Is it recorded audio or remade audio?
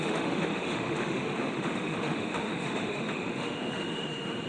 remade